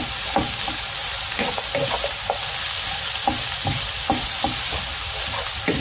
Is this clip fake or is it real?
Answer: real